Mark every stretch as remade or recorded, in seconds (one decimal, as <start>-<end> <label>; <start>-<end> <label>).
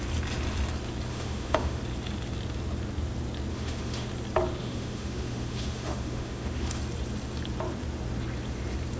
0.0-1.1 recorded; 1.1-1.8 remade; 1.8-3.5 recorded; 3.5-4.1 remade; 4.1-4.6 recorded; 4.6-6.8 remade; 6.8-9.0 recorded